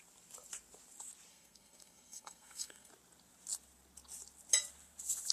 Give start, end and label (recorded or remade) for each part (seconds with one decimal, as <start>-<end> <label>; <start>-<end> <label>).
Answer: 0.0-1.3 recorded; 1.3-2.9 remade; 2.9-5.3 recorded